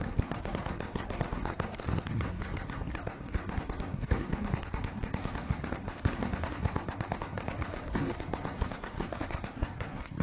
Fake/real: fake